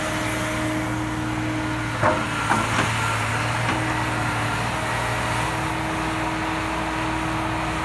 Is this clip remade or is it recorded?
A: recorded